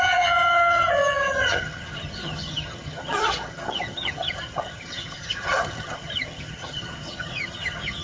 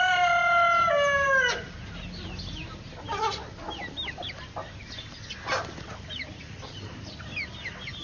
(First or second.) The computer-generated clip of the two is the first